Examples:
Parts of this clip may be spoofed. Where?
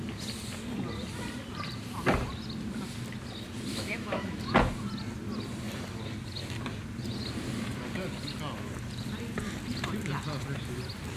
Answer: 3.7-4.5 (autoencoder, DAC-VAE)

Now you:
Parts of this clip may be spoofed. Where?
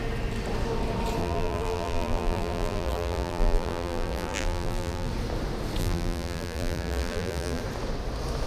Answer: 1.2-5.1 (vocoder, BigVGAN v2); 5.8-7.6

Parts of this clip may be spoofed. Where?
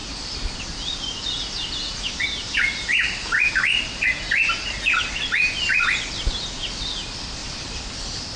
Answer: 0.0-3.5 (vocoder, BigVGAN v2); 7.4-8.0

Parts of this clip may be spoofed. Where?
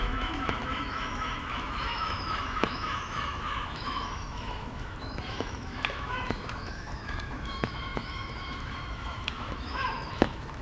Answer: 0.0-10.6 (autoencoder, DAC-VAE)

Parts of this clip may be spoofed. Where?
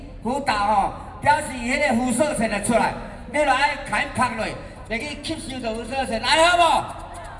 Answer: none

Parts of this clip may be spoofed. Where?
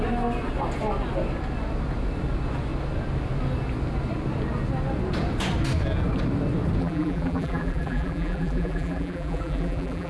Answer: 6.8-10.1 (vocoder, BigVGAN v2)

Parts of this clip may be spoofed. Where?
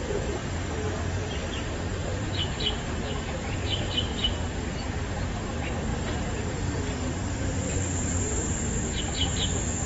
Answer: 0.4-1.3 (vocoder, BigVGAN v2); 2.0-2.7; 4.1-4.7; 5.9-9.0